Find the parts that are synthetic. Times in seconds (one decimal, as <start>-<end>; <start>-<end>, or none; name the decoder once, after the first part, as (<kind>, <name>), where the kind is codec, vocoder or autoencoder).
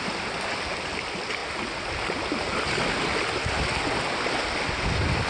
none